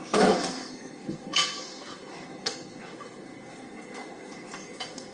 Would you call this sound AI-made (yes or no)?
yes